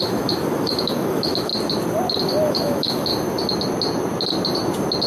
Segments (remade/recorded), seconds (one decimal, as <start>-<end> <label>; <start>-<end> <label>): 0.0-1.5 remade; 1.5-2.5 recorded; 2.5-3.1 remade; 3.1-5.1 recorded